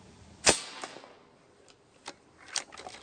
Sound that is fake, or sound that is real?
real